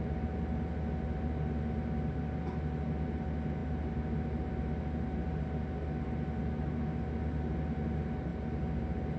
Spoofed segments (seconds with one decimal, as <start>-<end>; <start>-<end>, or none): none